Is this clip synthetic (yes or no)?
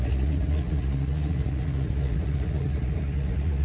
yes